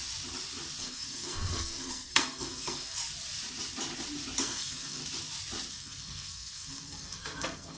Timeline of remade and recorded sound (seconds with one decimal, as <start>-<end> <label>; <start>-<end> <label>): 0.0-0.8 recorded; 0.8-3.0 remade; 3.0-4.4 recorded; 4.4-5.0 remade; 5.0-5.7 recorded; 5.7-7.8 remade